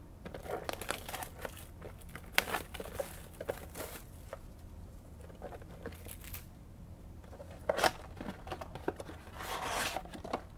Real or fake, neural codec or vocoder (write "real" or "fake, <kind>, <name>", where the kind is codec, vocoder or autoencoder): real